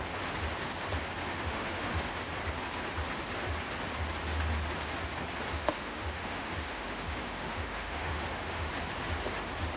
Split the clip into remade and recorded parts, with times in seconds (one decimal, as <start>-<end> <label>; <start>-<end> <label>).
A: 0.0-1.3 recorded; 1.3-1.9 remade; 1.9-5.6 recorded; 5.6-8.7 remade; 8.7-9.8 recorded